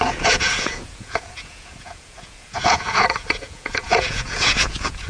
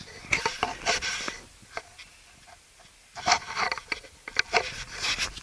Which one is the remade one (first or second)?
first